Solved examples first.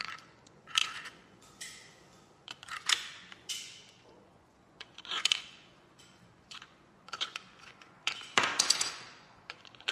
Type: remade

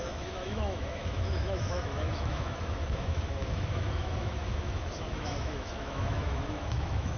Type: remade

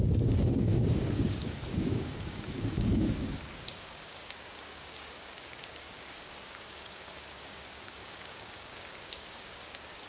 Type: remade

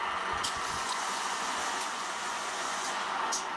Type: remade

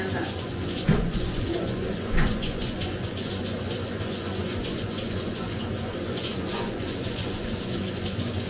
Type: remade